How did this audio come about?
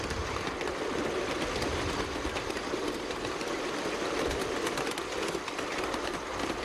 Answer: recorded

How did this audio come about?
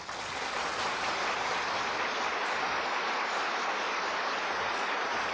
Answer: recorded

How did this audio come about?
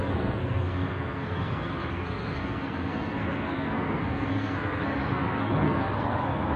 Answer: remade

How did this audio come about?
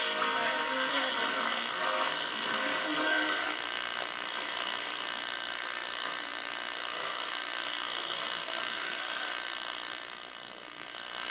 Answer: remade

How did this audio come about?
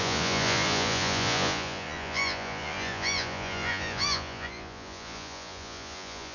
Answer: remade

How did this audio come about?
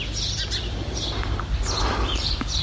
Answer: recorded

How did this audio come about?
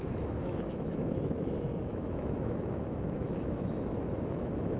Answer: remade